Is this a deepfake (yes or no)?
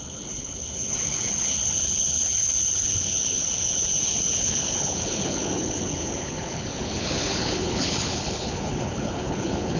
yes